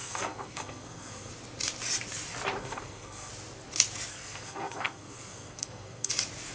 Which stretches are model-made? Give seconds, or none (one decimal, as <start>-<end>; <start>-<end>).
0.0-1.3; 2.6-3.3; 4.1-6.1